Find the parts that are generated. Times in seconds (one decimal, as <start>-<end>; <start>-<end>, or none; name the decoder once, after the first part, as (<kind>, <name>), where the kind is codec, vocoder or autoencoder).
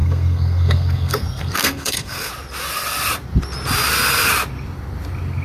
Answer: 0.0-2.3 (codec, SNAC)